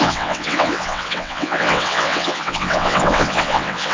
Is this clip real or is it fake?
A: fake